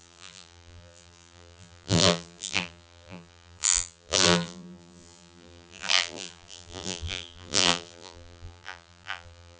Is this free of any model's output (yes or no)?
no